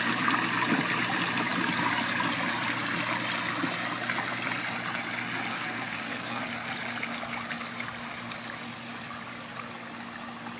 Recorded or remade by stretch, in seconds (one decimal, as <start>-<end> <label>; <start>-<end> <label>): 0.0-5.5 recorded; 5.5-6.4 remade; 6.4-10.6 recorded